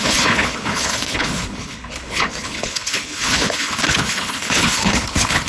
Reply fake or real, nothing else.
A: fake